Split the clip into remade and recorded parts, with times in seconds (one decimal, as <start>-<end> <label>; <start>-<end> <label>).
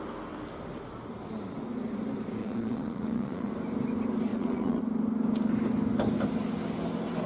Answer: 0.0-2.4 recorded; 2.4-3.5 remade; 3.5-4.3 recorded; 4.3-4.8 remade; 4.8-7.3 recorded